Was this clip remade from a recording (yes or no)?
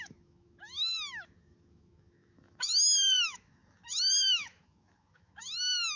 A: yes